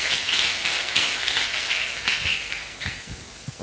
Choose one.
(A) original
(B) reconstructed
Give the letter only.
B